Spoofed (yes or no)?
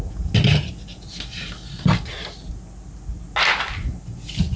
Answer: no